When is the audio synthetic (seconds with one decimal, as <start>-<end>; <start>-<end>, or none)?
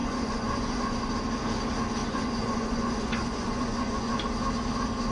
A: 0.0-1.1; 2.0-4.1